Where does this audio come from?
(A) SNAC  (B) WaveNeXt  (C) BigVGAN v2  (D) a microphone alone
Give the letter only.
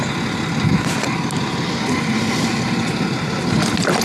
D